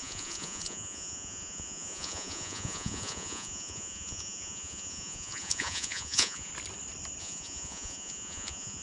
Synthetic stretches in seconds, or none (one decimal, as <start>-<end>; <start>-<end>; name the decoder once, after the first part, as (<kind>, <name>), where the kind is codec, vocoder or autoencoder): 0.0-6.5 (vocoder, Vocos); 7.2-8.8